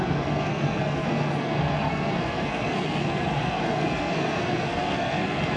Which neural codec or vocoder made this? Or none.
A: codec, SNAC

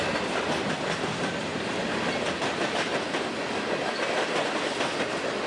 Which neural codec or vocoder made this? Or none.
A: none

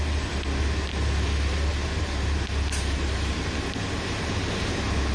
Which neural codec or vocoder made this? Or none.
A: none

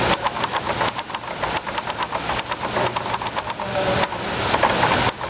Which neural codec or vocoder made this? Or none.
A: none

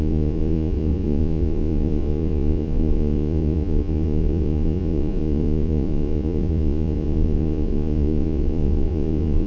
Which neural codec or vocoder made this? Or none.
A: vocoder, Vocos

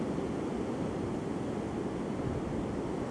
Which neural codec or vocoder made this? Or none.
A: none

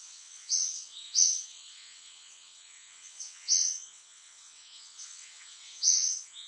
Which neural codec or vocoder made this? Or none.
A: vocoder, WaveNeXt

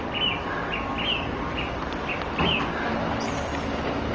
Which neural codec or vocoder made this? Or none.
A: none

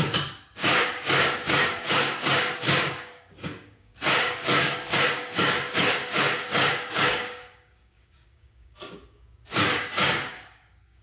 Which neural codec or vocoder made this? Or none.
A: codec, DAC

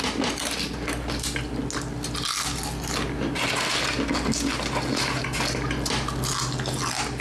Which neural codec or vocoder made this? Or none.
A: none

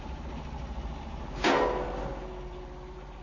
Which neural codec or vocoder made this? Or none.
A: none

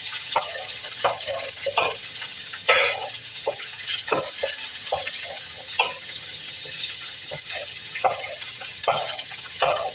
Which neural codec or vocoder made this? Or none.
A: vocoder, HiFi-GAN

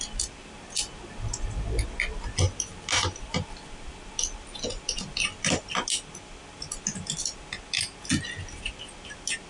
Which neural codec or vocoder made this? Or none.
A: none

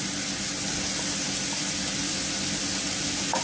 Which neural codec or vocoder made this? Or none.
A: none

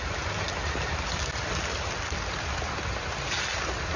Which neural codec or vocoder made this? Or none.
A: none